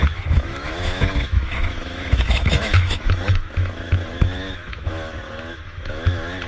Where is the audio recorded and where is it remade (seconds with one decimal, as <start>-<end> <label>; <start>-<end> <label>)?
0.0-6.5 remade

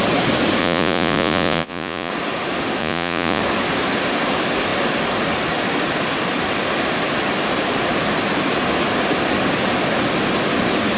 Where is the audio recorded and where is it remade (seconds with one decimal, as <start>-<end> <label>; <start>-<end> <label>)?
0.0-0.6 recorded; 0.6-2.1 remade; 2.1-2.8 recorded; 2.8-3.4 remade; 3.4-11.0 recorded

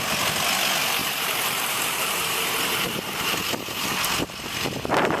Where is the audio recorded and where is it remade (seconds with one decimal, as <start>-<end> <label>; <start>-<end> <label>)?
0.0-1.0 recorded; 1.0-3.4 remade; 3.4-5.2 recorded